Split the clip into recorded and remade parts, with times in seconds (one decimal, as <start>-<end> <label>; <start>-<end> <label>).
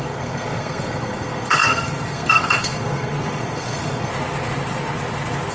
0.0-4.1 remade; 4.1-5.5 recorded